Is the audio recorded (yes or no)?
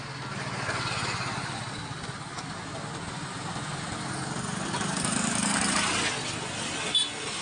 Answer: yes